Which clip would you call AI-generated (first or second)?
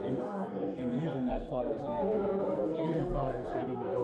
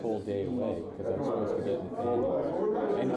first